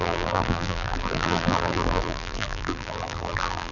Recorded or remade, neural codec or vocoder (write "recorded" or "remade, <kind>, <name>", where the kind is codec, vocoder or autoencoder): remade, vocoder, BigVGAN v2